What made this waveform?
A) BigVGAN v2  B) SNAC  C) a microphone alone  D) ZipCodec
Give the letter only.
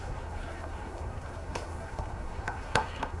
B